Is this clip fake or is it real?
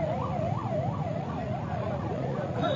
fake